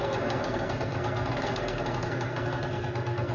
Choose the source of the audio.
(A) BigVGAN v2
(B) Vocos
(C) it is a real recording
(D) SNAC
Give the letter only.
D